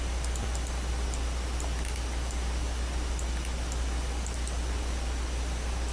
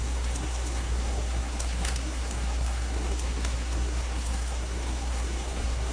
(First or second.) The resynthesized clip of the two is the second